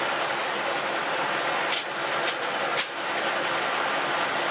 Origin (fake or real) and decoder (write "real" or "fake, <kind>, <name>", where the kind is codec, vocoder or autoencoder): real